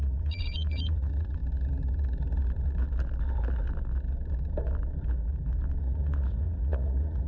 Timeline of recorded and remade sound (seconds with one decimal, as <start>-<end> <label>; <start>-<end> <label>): 0.0-1.4 remade; 1.4-5.8 recorded; 5.8-7.3 remade